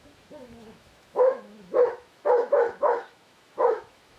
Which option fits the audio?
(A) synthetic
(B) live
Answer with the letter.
A